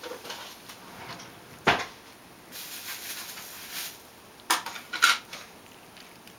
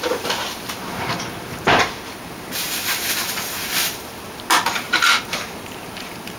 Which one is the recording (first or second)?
first